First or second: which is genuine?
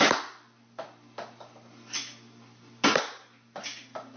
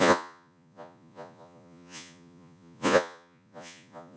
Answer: first